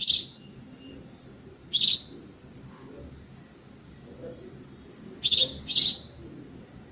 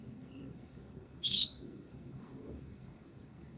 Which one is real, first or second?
first